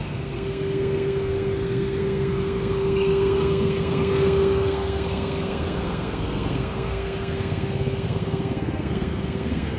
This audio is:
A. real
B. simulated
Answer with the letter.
B